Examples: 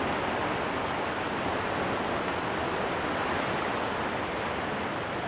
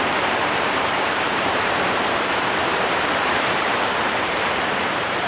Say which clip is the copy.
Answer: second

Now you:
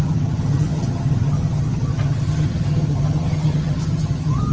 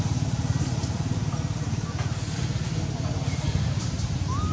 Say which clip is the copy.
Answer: first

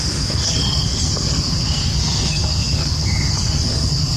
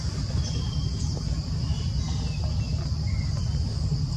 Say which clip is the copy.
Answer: first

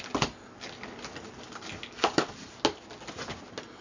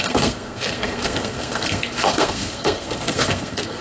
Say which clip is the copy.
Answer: second